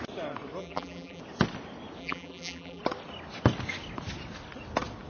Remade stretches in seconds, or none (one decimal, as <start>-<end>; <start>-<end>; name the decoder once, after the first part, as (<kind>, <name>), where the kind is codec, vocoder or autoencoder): 0.6-1.2 (vocoder, BigVGAN v2); 2.0-2.8